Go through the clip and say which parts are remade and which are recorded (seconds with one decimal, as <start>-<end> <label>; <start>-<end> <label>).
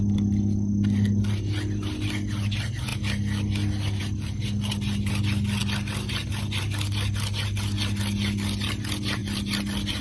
0.0-10.0 recorded